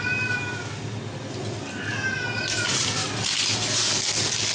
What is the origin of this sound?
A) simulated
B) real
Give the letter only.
B